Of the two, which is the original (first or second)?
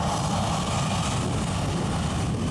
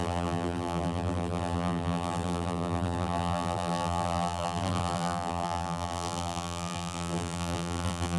first